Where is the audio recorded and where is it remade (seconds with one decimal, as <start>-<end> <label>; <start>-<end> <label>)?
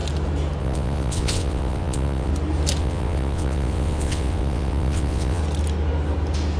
0.0-0.6 recorded; 0.6-2.3 remade; 2.3-2.8 recorded; 2.8-5.4 remade; 5.4-6.6 recorded